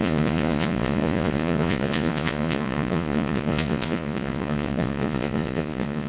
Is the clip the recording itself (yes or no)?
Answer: no